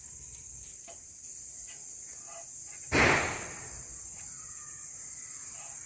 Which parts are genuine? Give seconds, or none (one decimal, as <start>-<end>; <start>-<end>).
0.0-5.9